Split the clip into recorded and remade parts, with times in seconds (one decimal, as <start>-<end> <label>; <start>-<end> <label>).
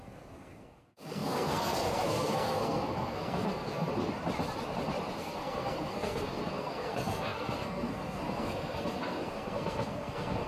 0.0-3.9 remade; 3.9-5.2 recorded; 5.2-10.5 remade